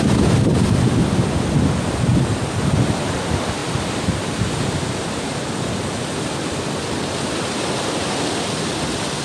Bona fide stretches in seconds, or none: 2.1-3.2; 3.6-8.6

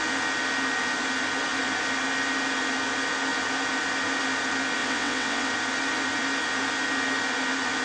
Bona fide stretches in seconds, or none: 0.0-4.8; 5.5-7.8

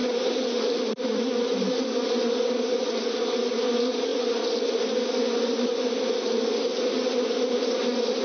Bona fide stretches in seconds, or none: 0.0-8.2

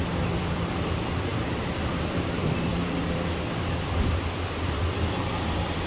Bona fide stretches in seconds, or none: 1.3-2.0

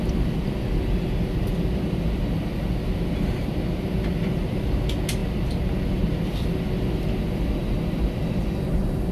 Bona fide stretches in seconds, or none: 0.0-9.1

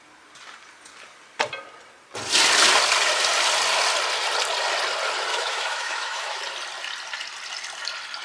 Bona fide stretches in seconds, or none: 0.0-5.3; 6.4-8.2

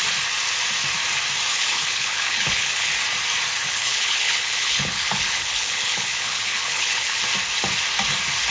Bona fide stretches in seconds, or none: 0.0-1.5; 2.9-3.6; 7.2-8.5

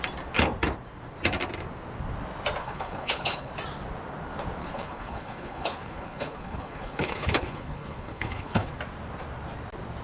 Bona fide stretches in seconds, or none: 0.0-2.6; 3.5-4.6; 8.7-10.0